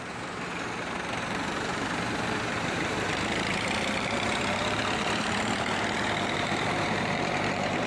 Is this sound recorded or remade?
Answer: remade